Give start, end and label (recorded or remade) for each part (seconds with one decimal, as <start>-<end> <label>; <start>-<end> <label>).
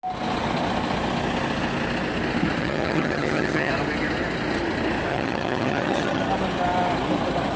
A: 0.0-2.6 recorded; 2.6-3.7 remade; 3.7-5.1 recorded; 5.1-6.2 remade; 6.2-7.6 recorded